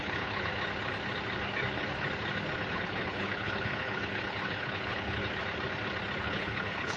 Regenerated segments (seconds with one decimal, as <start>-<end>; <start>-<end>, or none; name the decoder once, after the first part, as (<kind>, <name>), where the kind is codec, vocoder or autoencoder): 0.0-0.5 (codec, HILCodec); 2.7-5.2; 6.2-7.0